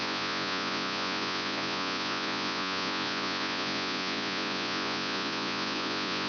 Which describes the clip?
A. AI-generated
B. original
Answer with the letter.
A